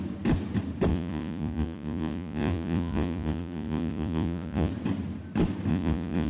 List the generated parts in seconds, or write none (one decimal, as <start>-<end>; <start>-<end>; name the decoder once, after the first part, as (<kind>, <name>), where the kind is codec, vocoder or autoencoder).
0.9-4.7 (vocoder, Vocos); 5.7-6.3